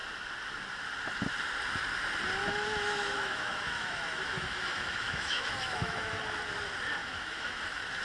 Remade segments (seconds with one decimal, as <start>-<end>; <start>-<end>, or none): 2.4-6.2; 7.0-7.6